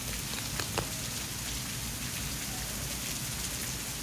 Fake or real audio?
real